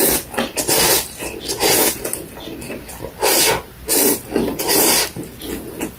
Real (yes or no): yes